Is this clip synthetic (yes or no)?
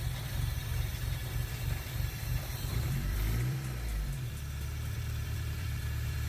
yes